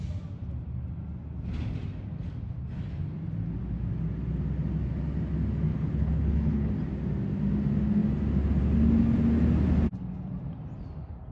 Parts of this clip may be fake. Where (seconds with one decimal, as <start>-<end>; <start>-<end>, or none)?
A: 5.7-6.7